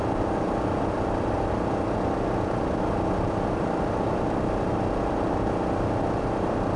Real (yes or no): yes